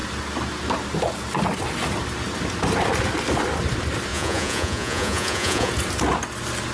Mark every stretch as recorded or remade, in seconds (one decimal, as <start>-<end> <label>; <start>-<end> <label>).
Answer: 0.0-4.1 recorded; 4.1-5.7 remade; 5.7-6.7 recorded